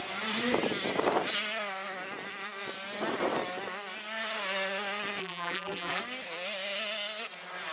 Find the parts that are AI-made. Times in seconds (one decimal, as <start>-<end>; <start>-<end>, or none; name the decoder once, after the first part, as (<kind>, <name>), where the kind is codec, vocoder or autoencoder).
5.2-6.0 (vocoder, BigVGAN v2)